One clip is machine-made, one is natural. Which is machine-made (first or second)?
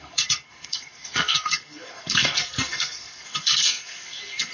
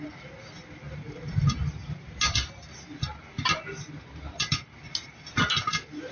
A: first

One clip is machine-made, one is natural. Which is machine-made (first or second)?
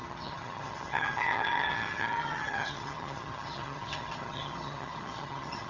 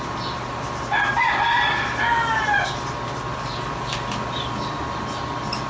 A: first